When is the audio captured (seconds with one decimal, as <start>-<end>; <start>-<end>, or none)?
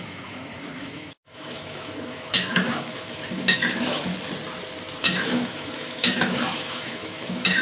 4.1-5.0